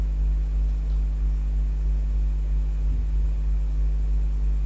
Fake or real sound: real